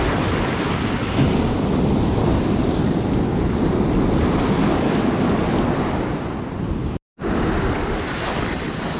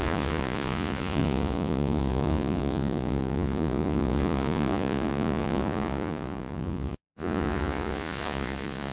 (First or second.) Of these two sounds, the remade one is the second